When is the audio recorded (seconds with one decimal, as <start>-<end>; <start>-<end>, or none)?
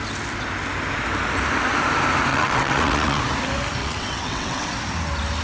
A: 0.0-2.3; 3.2-3.8; 4.7-5.4